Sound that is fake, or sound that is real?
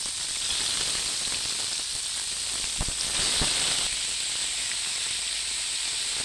real